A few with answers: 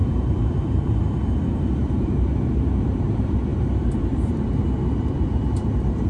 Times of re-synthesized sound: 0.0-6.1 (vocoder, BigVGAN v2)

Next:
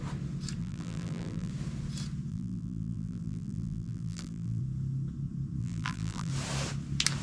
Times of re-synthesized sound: 0.6-1.5 (vocoder, BigVGAN v2); 2.3-4.6; 5.6-6.3

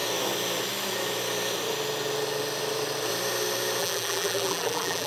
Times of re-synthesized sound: 3.8-5.1 (vocoder, BigVGAN v2)

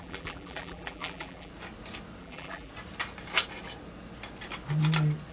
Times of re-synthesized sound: 0.0-1.5 (vocoder, BigVGAN v2); 2.2-2.7

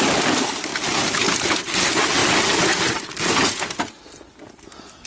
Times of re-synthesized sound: none

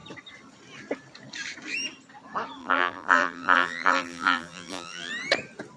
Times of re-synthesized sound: 2.6-5.1 (vocoder, BigVGAN v2)

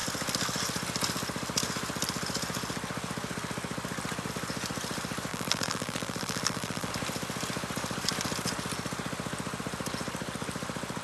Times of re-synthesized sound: 5.3-6.9 (vocoder, BigVGAN v2)

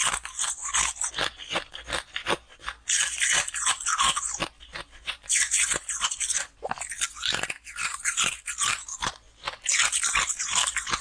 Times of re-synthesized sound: 4.7-5.6 (vocoder, BigVGAN v2)